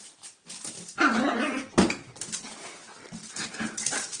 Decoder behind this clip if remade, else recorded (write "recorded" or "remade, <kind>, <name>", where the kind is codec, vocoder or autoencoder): recorded